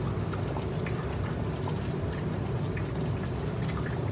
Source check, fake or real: real